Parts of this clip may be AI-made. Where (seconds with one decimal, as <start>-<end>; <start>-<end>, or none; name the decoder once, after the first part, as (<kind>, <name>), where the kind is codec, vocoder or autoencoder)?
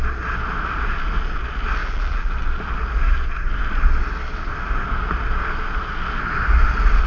1.8-2.3 (vocoder, BigVGAN v2)